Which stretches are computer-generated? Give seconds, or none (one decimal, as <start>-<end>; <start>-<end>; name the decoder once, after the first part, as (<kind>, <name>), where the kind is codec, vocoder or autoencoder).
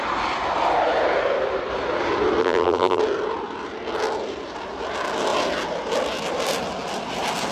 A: 2.4-3.0 (vocoder, BigVGAN v2)